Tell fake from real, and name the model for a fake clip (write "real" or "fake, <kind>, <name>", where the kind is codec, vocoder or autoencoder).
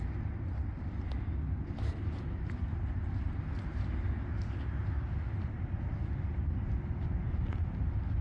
real